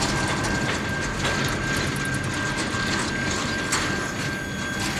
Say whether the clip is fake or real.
real